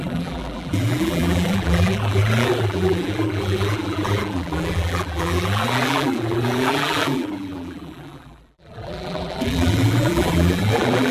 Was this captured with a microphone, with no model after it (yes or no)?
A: no